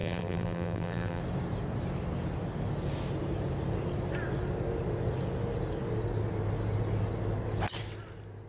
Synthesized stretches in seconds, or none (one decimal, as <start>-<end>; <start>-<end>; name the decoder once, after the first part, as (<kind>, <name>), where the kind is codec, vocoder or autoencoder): 0.0-1.2 (vocoder, BigVGAN v2)